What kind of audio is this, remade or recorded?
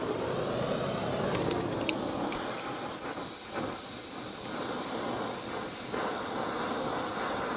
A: recorded